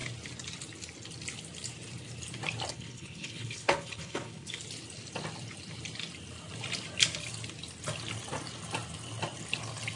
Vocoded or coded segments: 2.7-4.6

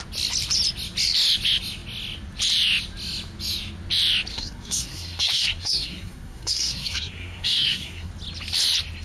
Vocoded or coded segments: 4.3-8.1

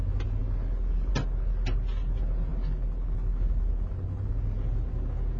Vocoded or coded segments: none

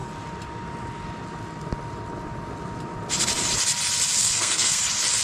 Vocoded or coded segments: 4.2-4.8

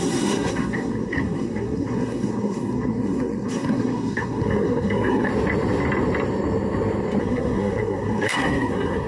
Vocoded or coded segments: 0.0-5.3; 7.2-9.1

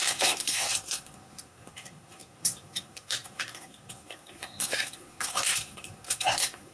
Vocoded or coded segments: 0.0-6.7